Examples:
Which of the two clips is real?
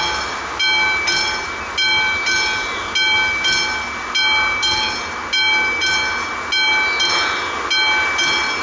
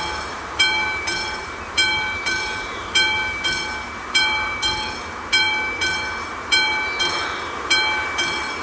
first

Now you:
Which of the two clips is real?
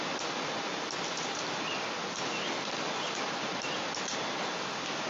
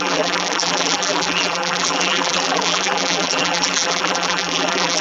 first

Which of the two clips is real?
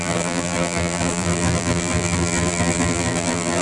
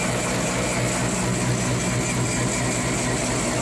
second